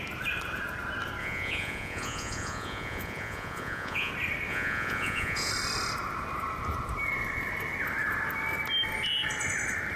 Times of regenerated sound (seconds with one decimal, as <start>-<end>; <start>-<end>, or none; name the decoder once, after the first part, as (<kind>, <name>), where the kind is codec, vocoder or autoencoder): 1.2-4.1 (vocoder, Vocos); 4.5-5.5